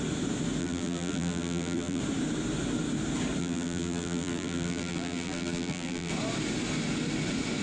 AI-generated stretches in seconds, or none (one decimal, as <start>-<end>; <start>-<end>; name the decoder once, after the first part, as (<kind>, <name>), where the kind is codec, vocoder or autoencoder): 0.6-2.0 (vocoder, BigVGAN v2); 3.4-6.1